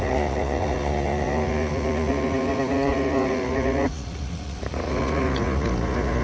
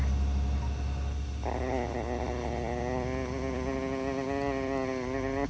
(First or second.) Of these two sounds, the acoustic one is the second